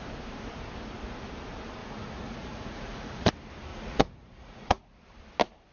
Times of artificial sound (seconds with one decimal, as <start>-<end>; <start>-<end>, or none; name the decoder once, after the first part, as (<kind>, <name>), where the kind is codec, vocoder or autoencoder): 1.8-3.3 (vocoder, Vocos); 3.7-4.8